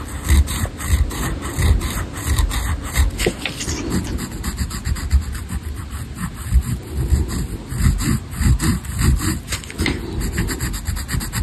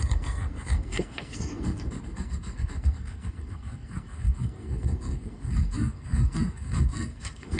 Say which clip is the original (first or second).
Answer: first